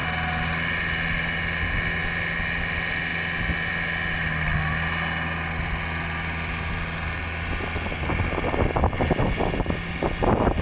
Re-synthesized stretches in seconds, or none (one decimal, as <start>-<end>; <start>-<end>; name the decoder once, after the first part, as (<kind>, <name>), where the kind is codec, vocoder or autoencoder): none